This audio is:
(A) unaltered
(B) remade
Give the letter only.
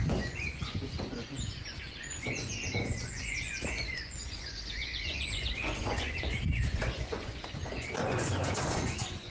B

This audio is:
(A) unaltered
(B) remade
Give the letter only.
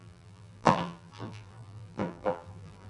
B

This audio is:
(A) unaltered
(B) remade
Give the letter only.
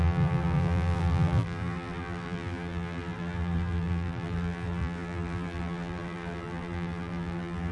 B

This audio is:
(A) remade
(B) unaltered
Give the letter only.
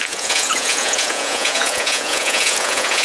A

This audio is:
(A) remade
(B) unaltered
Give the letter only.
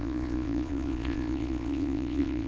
A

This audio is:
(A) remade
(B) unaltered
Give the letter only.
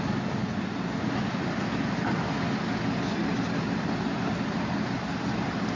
B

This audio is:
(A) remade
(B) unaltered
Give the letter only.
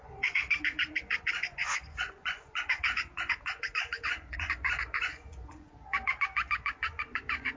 A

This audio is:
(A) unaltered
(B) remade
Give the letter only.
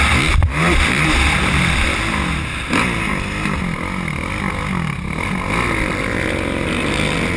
A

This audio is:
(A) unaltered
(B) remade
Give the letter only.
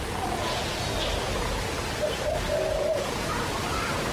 A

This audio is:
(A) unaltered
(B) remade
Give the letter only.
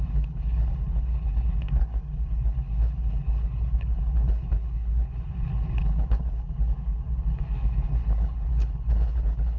B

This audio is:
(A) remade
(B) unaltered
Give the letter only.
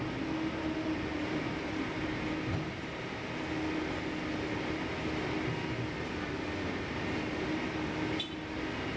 B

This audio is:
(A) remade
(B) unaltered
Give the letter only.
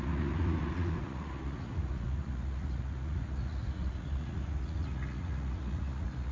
A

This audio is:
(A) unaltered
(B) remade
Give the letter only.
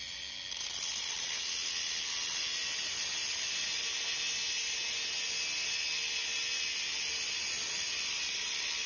A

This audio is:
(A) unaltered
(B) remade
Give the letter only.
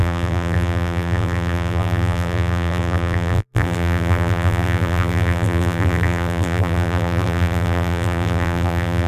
B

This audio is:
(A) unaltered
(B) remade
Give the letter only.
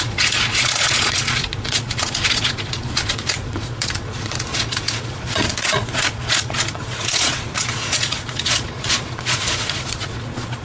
B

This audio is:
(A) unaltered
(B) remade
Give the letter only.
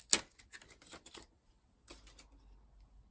A